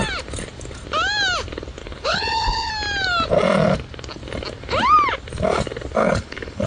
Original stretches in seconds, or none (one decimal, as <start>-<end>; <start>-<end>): 0.0-1.8; 2.7-6.0